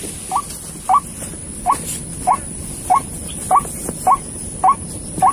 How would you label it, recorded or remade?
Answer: recorded